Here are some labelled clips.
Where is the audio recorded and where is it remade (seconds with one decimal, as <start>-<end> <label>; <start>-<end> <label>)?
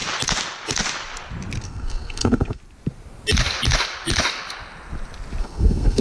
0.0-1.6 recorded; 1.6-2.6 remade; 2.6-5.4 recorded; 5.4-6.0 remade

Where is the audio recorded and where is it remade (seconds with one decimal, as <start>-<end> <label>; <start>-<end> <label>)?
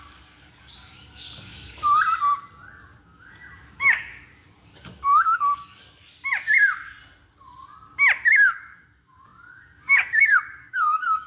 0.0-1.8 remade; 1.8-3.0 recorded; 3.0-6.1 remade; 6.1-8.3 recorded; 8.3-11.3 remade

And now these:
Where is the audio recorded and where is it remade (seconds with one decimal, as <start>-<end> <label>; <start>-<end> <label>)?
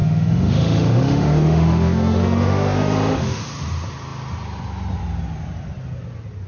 0.0-3.4 remade; 3.4-6.5 recorded